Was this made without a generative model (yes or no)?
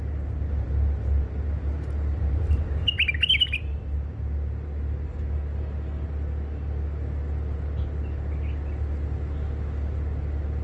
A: yes